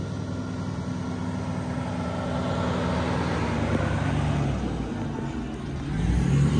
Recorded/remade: recorded